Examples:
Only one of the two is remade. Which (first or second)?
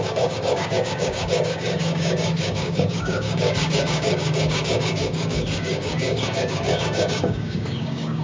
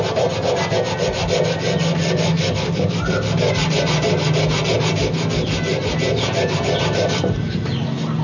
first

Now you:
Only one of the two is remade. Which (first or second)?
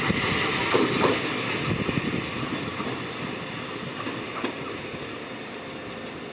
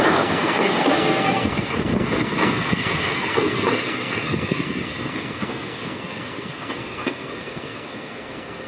second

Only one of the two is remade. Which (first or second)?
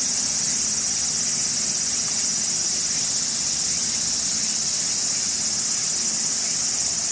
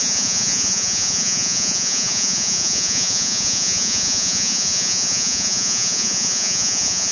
second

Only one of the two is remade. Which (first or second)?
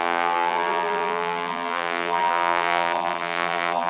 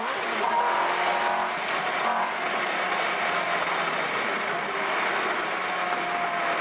first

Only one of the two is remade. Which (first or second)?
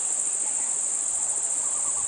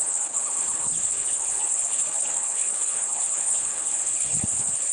second